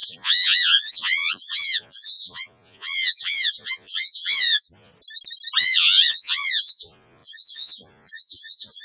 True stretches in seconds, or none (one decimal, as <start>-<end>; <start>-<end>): 4.9-5.6